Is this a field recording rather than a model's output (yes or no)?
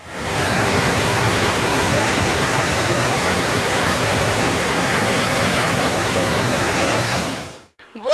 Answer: no